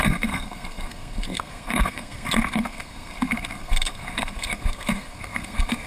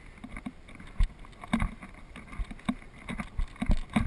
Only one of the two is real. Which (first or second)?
second